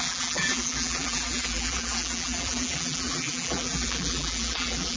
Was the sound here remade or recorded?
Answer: remade